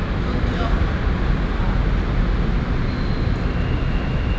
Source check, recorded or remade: recorded